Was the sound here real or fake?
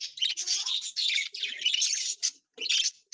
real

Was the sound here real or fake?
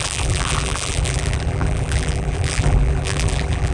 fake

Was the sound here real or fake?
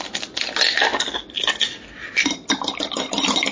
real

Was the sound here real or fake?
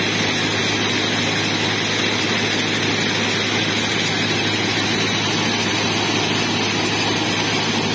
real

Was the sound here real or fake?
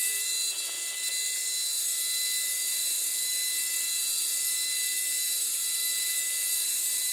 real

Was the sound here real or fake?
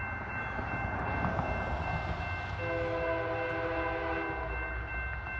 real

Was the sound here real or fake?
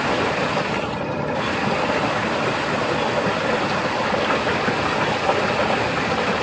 real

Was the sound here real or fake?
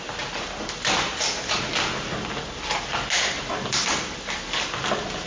real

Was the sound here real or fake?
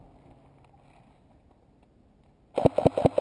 real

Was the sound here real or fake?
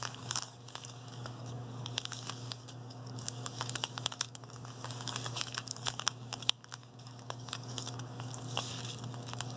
fake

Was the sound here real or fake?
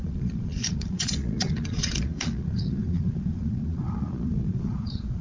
fake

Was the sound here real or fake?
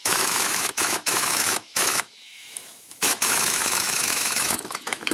fake